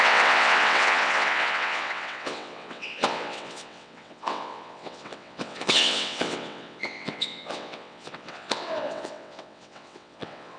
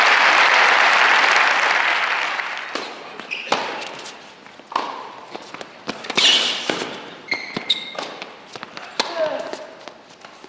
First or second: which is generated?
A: first